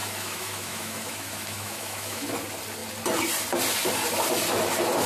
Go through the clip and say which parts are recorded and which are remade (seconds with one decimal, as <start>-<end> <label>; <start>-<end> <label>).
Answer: 0.0-2.3 remade; 2.3-5.1 recorded